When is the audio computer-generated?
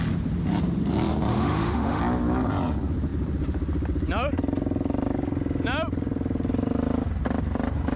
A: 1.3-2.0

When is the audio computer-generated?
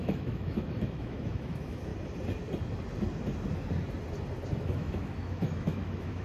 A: 0.0-1.9; 4.6-6.2